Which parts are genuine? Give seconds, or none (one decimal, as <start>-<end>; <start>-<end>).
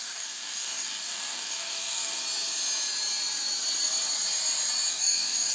2.2-4.9